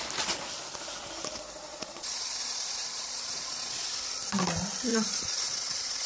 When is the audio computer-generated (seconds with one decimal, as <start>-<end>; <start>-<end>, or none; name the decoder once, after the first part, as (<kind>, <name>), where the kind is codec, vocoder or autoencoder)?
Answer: 1.7-3.9 (vocoder, Vocos); 4.9-6.1